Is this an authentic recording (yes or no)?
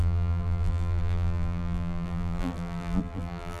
no